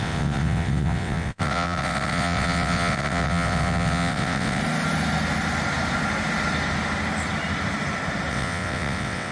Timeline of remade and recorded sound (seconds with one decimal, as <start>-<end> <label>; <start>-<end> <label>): 0.0-4.6 remade; 4.6-8.3 recorded; 8.3-9.3 remade